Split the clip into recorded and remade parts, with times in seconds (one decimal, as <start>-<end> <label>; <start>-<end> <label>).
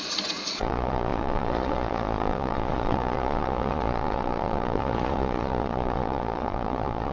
0.0-7.1 remade